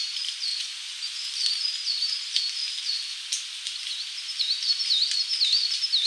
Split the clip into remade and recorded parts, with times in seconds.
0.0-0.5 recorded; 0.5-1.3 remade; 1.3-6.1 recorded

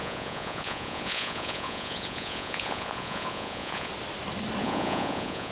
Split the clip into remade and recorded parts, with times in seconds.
0.0-3.9 remade; 3.9-4.6 recorded; 4.6-5.5 remade

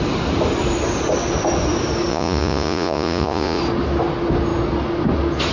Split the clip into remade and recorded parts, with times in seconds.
0.0-2.1 recorded; 2.1-3.6 remade; 3.6-5.5 recorded